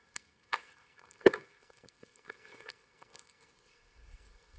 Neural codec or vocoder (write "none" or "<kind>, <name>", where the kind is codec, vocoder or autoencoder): codec, SNAC